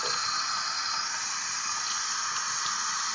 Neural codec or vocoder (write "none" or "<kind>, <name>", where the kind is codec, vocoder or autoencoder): none